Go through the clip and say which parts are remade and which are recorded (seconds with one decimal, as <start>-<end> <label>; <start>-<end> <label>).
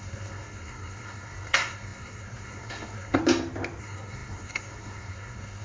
0.0-3.2 remade; 3.2-3.8 recorded; 3.8-5.6 remade